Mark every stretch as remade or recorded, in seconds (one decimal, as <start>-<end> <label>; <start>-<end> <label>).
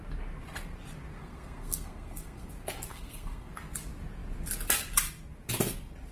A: 0.0-1.2 recorded; 1.2-2.5 remade; 2.5-2.9 recorded; 2.9-3.5 remade; 3.5-6.1 recorded